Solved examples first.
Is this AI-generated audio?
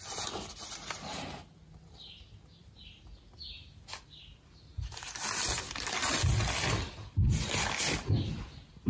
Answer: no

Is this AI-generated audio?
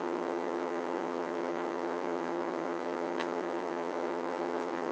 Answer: yes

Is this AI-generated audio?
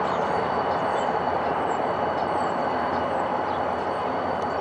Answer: yes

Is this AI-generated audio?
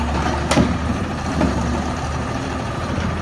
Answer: no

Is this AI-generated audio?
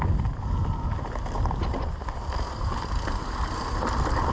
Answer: no